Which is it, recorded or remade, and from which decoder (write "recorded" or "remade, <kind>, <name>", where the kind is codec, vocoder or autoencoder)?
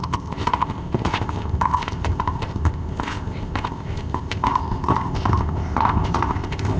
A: remade, codec, ZipCodec